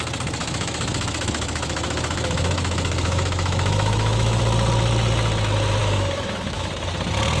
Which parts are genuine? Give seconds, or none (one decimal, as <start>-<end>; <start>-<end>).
0.0-0.4; 4.4-5.8; 6.7-7.4